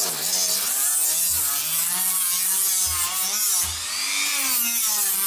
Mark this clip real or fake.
real